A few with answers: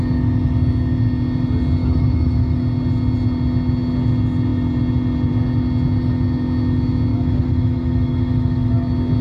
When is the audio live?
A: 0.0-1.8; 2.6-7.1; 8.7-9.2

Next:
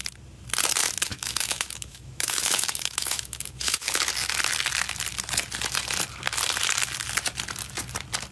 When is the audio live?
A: 0.0-1.1; 4.1-8.3

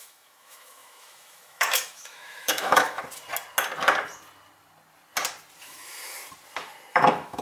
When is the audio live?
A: 3.0-5.6; 6.0-6.9

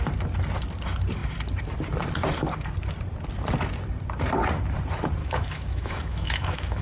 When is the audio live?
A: 0.0-5.2

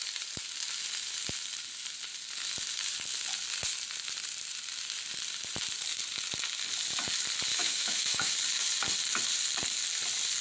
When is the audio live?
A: 0.0-7.5; 8.3-10.4

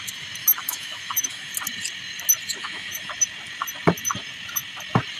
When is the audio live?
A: 0.0-0.4; 1.5-2.6; 3.1-5.2